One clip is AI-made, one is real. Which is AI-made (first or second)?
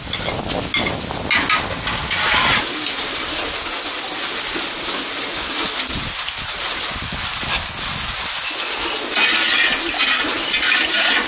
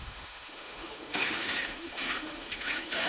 second